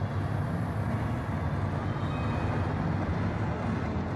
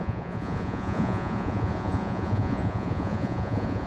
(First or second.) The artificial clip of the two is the second